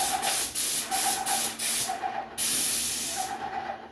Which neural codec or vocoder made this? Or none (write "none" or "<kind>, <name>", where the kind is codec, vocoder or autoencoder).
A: none